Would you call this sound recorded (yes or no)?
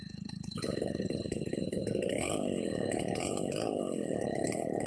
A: no